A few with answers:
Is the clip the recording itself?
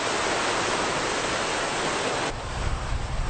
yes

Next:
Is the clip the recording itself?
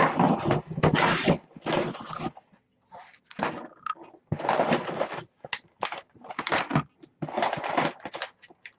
yes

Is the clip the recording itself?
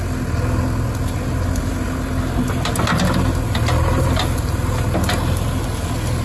yes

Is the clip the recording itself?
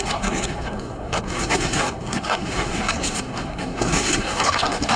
no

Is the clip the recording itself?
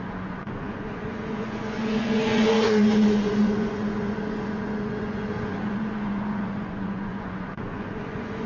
no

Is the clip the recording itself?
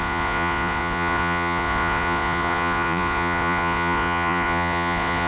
no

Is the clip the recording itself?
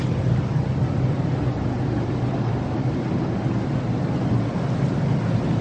yes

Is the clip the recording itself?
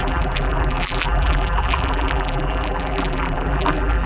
no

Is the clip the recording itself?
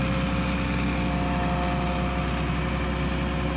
yes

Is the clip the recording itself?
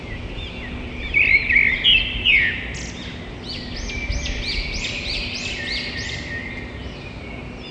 yes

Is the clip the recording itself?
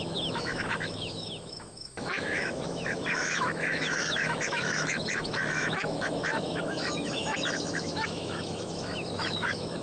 no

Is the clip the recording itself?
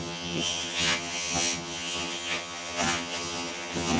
no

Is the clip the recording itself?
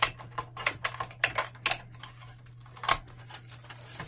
yes